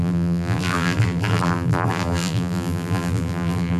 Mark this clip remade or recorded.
remade